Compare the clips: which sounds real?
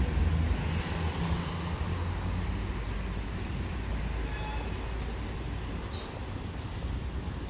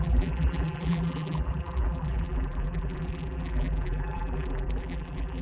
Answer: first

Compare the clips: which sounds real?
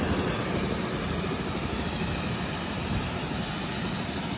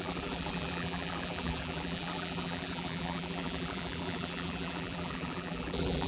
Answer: first